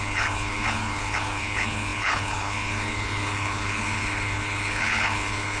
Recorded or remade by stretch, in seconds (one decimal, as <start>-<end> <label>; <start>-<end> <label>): 0.0-5.6 remade